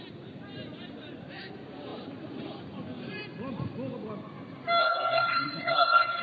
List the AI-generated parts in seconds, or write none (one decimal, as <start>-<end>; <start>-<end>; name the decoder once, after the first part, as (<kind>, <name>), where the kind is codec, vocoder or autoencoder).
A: 4.8-6.2 (codec, SNAC)